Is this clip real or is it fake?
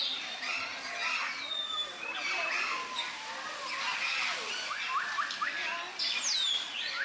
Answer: real